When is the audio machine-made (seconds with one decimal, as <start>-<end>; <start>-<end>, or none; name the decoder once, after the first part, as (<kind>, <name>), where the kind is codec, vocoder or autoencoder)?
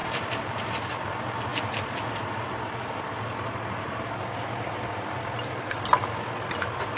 0.0-0.6 (vocoder, BigVGAN v2)